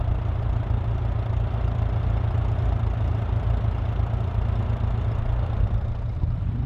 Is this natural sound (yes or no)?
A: yes